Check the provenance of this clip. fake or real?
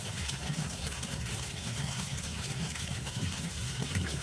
fake